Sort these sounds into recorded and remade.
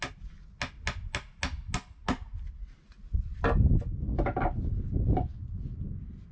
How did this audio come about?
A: recorded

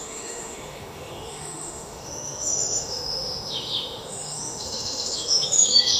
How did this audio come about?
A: remade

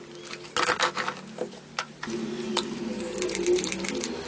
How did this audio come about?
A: recorded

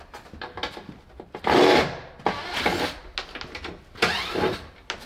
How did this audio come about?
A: recorded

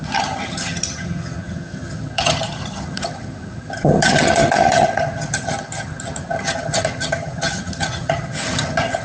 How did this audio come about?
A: remade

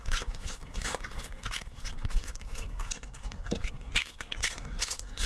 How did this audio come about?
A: remade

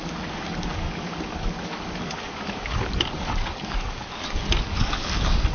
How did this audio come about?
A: remade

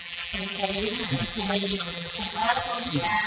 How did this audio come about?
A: remade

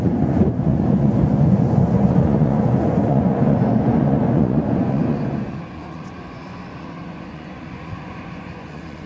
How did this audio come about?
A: remade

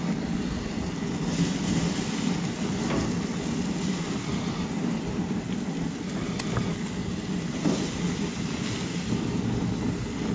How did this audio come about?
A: recorded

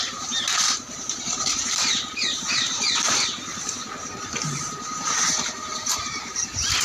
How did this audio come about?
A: remade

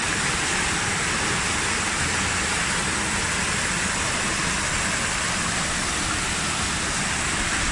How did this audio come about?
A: recorded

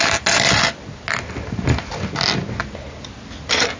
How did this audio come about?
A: recorded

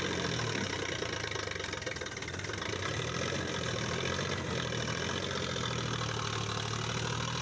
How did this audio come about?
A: recorded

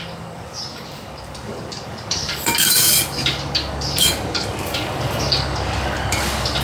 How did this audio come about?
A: remade